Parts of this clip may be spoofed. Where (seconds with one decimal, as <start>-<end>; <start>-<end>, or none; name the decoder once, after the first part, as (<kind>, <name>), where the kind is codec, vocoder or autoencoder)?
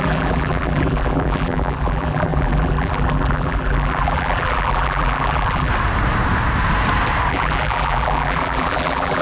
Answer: 0.0-5.7 (vocoder, BigVGAN v2); 7.3-9.2